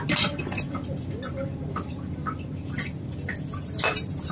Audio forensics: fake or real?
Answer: real